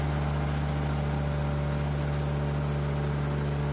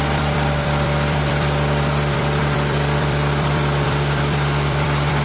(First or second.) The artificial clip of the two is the second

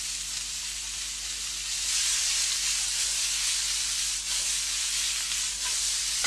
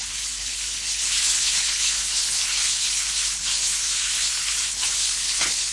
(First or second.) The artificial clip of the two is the second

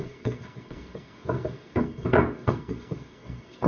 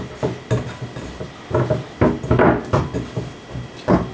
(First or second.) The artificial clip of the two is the first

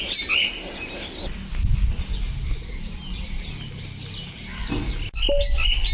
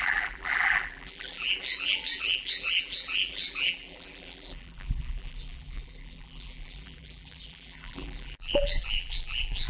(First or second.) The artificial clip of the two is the second